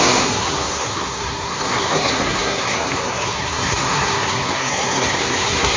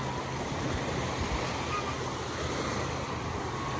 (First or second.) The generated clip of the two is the first